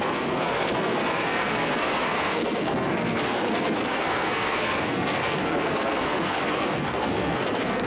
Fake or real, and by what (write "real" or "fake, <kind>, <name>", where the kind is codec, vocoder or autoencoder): fake, codec, SNAC